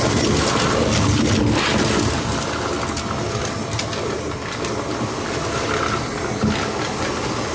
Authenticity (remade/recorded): recorded